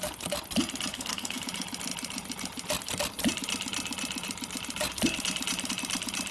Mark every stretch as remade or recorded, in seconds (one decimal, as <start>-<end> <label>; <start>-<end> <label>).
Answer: 0.0-0.9 recorded; 0.9-1.4 remade; 1.4-6.3 recorded